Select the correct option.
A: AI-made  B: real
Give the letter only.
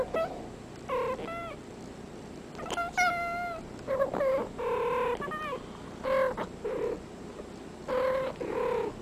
B